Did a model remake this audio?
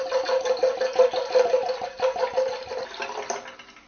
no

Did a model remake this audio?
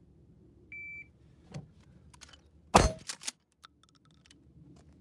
no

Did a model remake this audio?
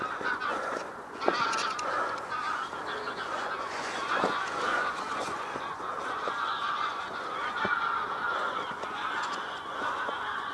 yes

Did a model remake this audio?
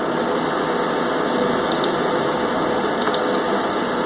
no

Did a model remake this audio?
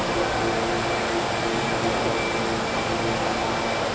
no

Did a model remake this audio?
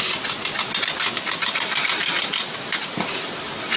no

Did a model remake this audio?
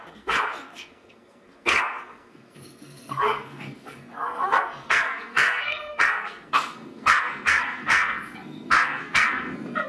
yes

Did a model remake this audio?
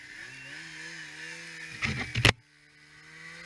no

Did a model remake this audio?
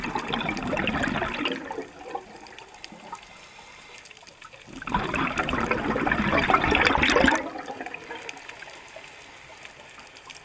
no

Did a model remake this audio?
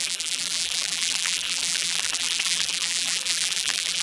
yes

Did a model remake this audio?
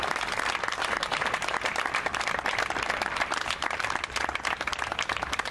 yes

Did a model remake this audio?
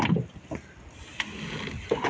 no